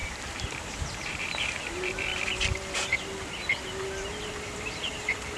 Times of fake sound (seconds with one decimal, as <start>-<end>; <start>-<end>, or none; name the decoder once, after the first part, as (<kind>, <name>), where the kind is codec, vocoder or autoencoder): 0.0-2.1 (vocoder, BigVGAN v2); 4.2-5.4

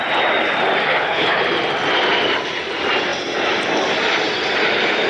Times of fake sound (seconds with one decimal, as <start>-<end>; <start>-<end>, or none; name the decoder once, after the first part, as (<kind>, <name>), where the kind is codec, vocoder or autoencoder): 0.9-1.4 (codec, HILCodec)

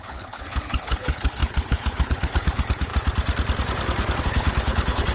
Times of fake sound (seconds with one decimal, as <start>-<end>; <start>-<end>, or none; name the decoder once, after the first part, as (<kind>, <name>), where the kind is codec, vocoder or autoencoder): 0.0-2.9 (codec, HILCodec); 4.2-5.1

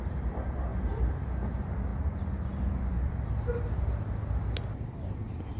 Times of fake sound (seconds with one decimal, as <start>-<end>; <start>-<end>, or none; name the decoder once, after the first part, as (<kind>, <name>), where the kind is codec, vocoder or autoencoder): none

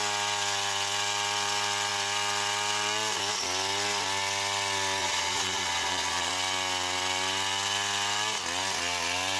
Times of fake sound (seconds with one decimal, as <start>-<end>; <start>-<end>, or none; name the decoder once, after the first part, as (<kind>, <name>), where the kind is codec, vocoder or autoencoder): 5.0-6.3 (vocoder, Vocos)

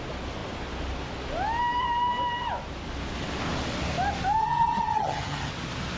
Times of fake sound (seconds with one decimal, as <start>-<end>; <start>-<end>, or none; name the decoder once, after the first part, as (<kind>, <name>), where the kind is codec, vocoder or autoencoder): 4.4-5.5 (vocoder, HiFi-GAN)

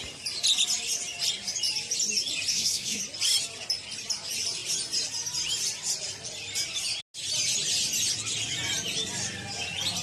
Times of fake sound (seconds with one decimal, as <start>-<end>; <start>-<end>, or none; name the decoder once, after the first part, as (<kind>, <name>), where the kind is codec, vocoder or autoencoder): 2.5-3.0 (codec, SNAC)